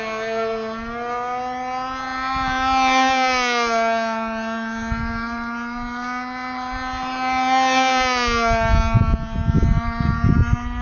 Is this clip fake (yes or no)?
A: no